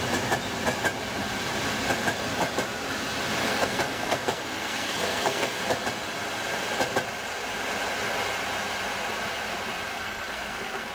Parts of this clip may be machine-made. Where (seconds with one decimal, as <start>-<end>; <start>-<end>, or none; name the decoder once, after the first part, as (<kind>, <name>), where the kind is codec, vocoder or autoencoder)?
3.4-5.6 (codec, SNAC); 9.9-10.9